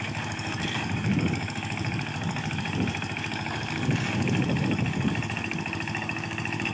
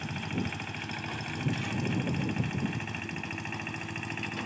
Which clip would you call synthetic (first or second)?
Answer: first